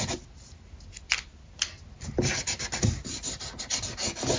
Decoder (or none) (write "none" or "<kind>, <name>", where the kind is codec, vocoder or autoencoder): none